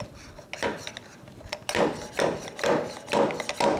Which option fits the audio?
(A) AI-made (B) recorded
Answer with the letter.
B